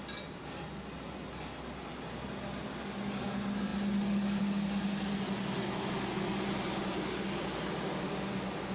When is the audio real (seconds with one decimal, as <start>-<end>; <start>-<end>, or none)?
0.0-8.7